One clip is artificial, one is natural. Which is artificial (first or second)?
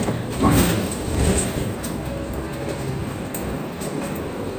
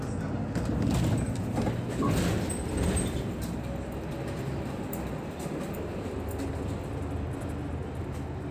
first